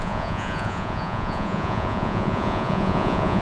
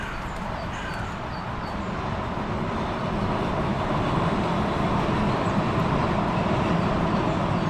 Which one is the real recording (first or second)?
second